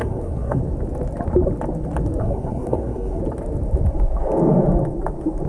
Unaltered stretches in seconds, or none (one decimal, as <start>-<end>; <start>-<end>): 0.6-2.2; 3.2-5.5